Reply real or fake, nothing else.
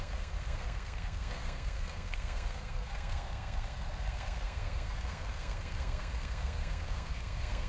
fake